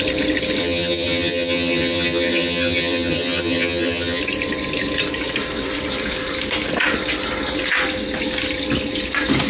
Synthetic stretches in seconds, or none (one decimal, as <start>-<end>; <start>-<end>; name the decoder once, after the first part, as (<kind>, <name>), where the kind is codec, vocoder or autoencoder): 0.6-4.2 (vocoder, HiFi-GAN)